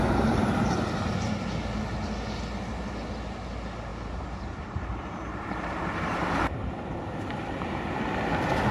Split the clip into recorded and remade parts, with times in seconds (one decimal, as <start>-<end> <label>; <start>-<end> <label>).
0.0-3.9 recorded; 3.9-7.8 remade; 7.8-8.7 recorded